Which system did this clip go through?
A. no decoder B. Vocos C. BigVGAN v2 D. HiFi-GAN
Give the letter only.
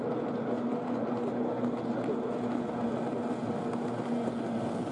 A